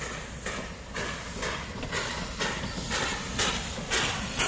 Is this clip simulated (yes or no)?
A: no